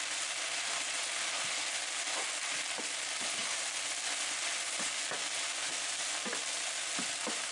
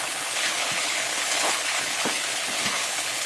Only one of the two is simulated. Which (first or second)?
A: second